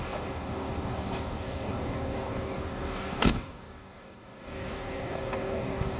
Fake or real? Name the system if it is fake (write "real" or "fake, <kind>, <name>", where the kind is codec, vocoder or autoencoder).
fake, codec, DAC